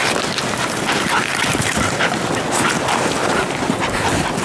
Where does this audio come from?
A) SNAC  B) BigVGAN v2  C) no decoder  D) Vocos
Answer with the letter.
C